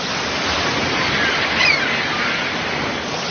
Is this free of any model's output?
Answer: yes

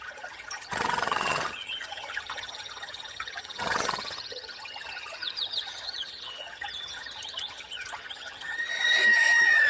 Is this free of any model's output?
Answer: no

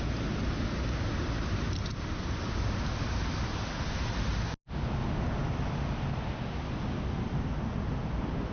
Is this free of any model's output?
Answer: yes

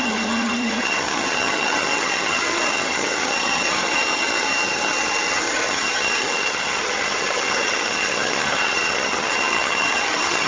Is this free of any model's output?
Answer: no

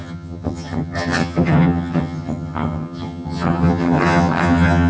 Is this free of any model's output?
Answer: no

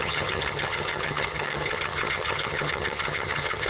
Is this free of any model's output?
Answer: no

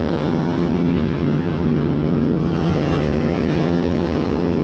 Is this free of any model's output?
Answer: no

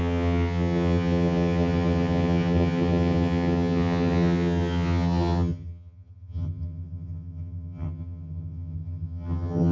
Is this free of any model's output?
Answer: no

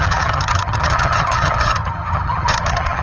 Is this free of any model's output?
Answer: no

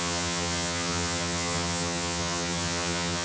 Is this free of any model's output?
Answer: no